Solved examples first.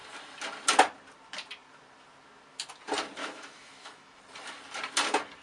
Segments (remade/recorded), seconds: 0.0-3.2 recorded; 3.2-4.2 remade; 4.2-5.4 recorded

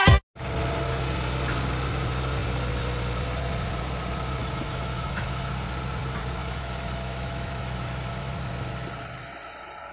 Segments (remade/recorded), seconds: 0.0-4.4 recorded; 4.4-5.5 remade; 5.5-6.4 recorded; 6.4-8.3 remade; 8.3-9.9 recorded

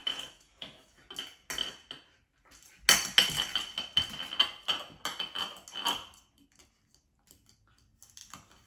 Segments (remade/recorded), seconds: 0.0-1.0 remade; 1.0-8.7 recorded

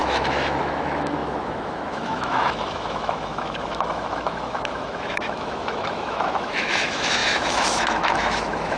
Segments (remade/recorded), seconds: 0.0-8.8 remade

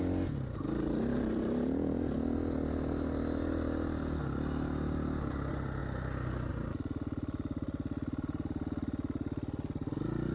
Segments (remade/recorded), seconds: 0.0-10.3 recorded

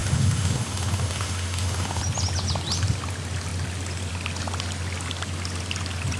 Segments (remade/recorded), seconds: 0.0-2.0 remade; 2.0-6.2 recorded

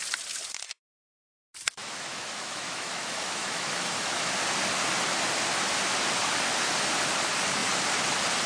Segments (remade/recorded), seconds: 0.0-1.8 recorded; 1.8-4.3 remade; 4.3-8.5 recorded

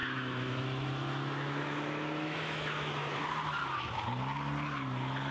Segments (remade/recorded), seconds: 0.0-3.2 remade; 3.2-5.3 recorded